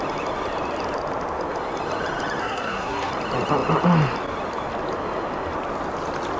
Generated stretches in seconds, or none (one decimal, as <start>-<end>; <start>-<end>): 2.4-3.1